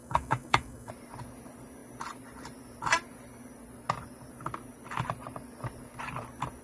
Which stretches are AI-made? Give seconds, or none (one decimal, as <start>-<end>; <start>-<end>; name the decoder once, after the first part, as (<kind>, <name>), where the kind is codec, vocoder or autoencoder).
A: 0.0-0.9 (autoencoder, DAC-VAE)